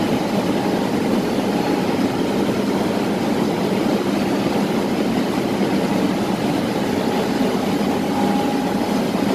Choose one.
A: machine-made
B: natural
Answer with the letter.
B